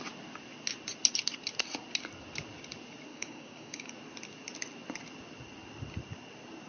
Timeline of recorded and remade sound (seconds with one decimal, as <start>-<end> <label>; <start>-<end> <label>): 0.0-3.1 recorded; 3.1-3.9 remade; 3.9-6.7 recorded